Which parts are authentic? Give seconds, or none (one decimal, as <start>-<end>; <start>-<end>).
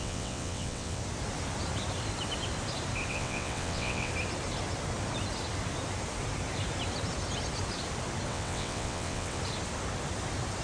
1.0-3.1; 4.1-8.3; 9.4-10.6